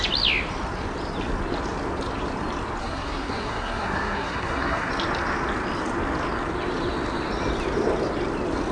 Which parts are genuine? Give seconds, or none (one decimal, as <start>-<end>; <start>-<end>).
0.0-2.8; 4.9-8.7